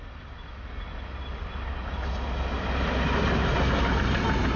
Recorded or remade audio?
recorded